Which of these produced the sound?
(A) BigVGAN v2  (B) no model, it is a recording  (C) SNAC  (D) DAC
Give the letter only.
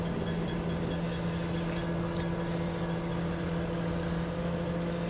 B